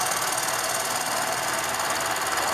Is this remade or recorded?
recorded